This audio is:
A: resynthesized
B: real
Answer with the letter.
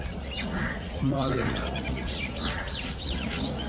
A